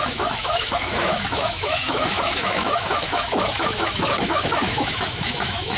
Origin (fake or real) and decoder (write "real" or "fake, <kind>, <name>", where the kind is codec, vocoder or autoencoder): fake, autoencoder, DAC-VAE